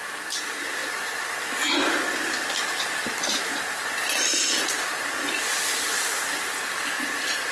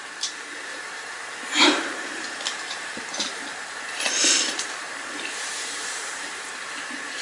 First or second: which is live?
first